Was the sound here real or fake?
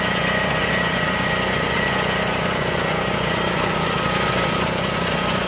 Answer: fake